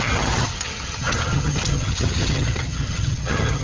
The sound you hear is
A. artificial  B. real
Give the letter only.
A